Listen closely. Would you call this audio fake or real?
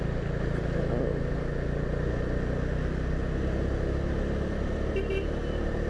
real